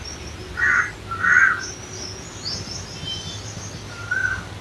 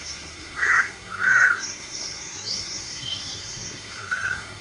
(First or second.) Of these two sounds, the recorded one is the first